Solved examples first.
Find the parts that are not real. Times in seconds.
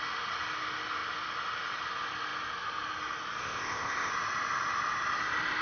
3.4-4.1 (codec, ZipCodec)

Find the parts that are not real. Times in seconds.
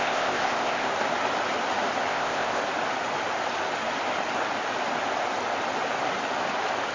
0.0-0.9 (codec, ZipCodec); 2.1-2.6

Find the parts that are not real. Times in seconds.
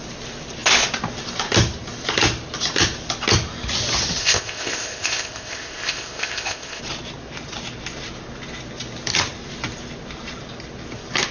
4.2-6.8 (codec, ZipCodec)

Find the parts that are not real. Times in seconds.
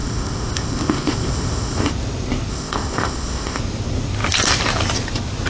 0.0-1.9 (codec, ZipCodec); 2.5-3.6